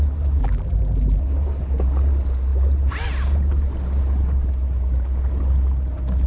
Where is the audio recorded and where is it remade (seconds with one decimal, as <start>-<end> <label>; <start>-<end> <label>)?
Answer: 0.0-0.4 recorded; 0.4-1.2 remade; 1.2-6.3 recorded

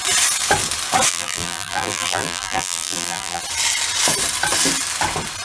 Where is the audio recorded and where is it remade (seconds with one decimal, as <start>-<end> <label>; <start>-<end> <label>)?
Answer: 0.0-1.1 recorded; 1.1-3.4 remade; 3.4-5.4 recorded

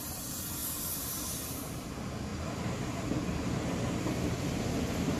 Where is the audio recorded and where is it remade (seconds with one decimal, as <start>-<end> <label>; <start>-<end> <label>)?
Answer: 0.0-0.6 remade; 0.6-1.6 recorded; 1.6-2.3 remade; 2.3-4.0 recorded; 4.0-5.2 remade

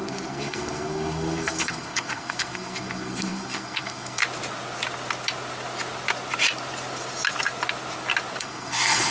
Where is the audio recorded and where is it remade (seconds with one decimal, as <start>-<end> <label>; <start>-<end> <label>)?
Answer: 0.0-4.2 remade; 4.2-8.4 recorded; 8.4-9.1 remade

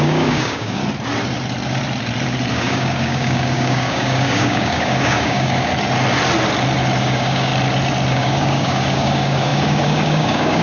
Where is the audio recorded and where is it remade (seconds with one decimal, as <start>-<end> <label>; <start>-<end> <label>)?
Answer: 0.0-0.8 remade; 0.8-2.5 recorded; 2.5-5.7 remade; 5.7-7.0 recorded; 7.0-7.5 remade; 7.5-8.1 recorded; 8.1-10.6 remade

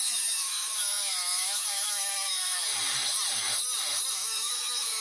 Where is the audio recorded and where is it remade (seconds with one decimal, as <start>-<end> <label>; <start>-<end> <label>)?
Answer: 0.0-2.7 remade; 2.7-4.1 recorded; 4.1-5.0 remade